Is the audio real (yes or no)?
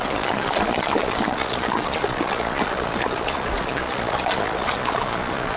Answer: no